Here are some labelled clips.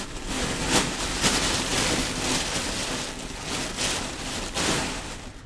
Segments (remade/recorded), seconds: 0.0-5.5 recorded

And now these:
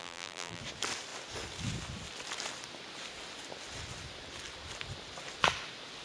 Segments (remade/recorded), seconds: 0.0-0.6 remade; 0.6-6.0 recorded

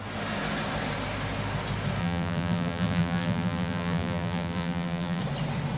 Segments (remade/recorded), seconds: 0.0-2.0 recorded; 2.0-5.2 remade; 5.2-5.8 recorded

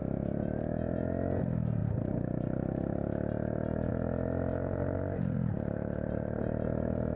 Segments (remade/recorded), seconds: 0.0-4.5 recorded; 4.5-6.4 remade; 6.4-7.2 recorded

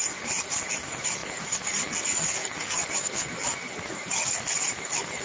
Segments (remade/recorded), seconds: 0.0-5.2 recorded

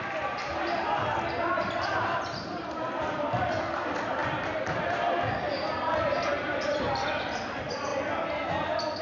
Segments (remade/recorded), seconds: 0.0-7.9 remade; 7.9-9.0 recorded

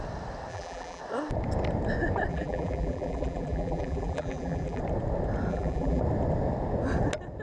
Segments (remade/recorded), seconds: 0.0-0.5 recorded; 0.5-1.0 remade; 1.0-2.3 recorded; 2.3-4.8 remade; 4.8-5.5 recorded; 5.5-6.0 remade; 6.0-7.4 recorded

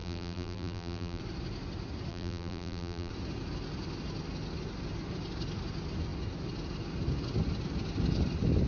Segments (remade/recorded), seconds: 0.0-1.2 remade; 1.2-2.1 recorded; 2.1-3.1 remade; 3.1-8.7 recorded